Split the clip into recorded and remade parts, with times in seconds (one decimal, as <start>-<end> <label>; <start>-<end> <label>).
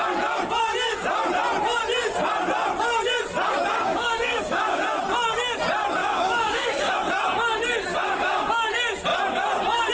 0.0-3.7 recorded; 3.7-4.8 remade; 4.8-6.0 recorded; 6.0-6.9 remade; 6.9-7.9 recorded; 7.9-8.5 remade; 8.5-9.9 recorded